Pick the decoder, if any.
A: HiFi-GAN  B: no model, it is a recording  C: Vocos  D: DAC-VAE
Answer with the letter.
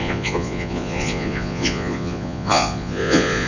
C